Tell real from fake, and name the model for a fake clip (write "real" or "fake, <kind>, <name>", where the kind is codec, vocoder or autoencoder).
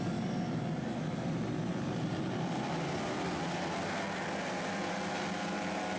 real